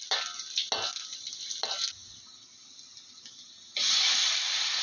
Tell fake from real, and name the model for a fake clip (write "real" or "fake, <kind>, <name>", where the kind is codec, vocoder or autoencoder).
real